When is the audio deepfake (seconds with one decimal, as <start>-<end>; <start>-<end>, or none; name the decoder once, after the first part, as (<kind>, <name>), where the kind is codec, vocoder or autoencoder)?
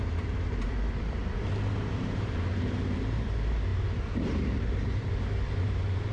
0.0-1.2 (vocoder, BigVGAN v2); 1.9-6.1